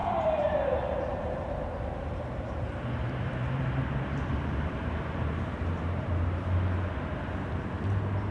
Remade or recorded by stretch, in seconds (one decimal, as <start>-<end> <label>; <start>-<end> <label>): 0.0-0.6 remade; 0.6-1.1 recorded; 1.1-6.1 remade; 6.1-8.3 recorded